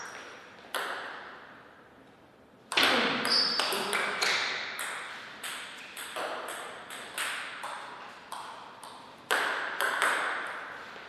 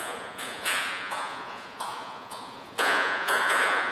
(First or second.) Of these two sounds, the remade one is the second